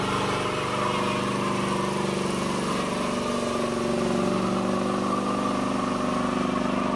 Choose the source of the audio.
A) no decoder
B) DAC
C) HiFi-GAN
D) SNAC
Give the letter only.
A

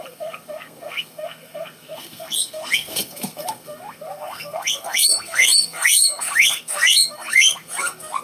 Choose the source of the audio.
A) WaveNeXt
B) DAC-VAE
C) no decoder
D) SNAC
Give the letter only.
D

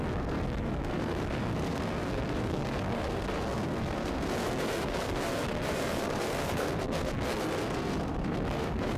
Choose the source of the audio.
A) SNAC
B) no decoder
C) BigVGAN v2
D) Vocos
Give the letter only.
A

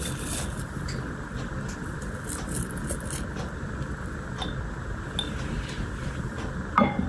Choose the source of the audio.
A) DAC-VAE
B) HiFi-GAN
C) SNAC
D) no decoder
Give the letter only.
D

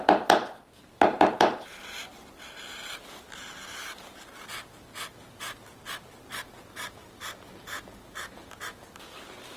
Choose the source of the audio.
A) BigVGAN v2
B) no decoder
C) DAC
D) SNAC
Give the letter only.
B